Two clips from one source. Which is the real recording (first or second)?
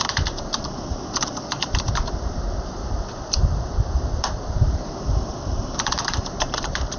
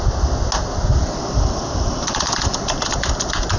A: second